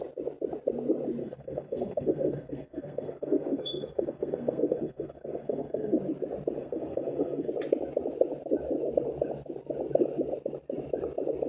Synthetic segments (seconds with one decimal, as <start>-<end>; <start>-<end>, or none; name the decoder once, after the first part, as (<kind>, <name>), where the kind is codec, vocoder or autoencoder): 1.2-6.0 (codec, SNAC); 6.6-7.5

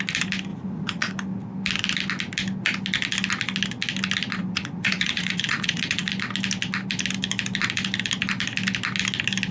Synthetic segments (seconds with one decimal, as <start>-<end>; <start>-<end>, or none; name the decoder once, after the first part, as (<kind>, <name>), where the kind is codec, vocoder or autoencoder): 0.5-1.1 (vocoder, Vocos); 4.4-6.1

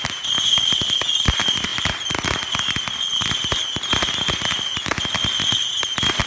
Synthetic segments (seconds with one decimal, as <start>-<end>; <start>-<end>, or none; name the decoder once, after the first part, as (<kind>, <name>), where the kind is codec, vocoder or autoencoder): none